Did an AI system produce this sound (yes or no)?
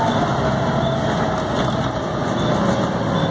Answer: no